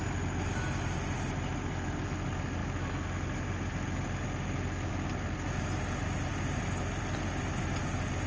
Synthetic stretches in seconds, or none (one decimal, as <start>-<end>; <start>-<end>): none